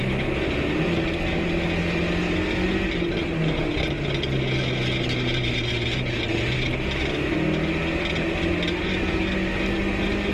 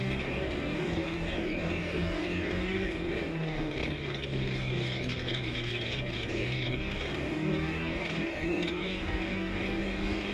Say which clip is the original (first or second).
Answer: first